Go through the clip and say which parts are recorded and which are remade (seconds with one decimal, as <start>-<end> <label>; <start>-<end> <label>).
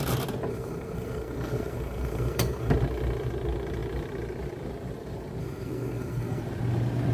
0.0-0.5 recorded; 0.5-2.7 remade; 2.7-5.4 recorded; 5.4-6.4 remade; 6.4-7.1 recorded